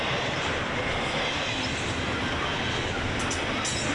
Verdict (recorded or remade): recorded